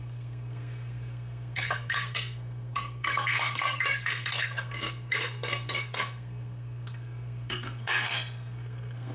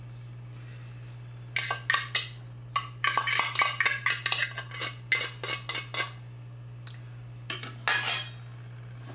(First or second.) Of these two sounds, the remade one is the first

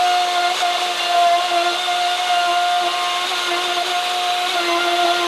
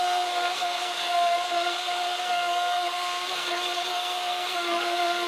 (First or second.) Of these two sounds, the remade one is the second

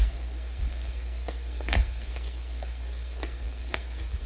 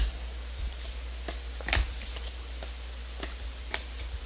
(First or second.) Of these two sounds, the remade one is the first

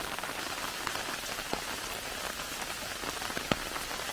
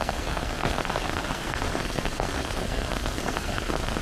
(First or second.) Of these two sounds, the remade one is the second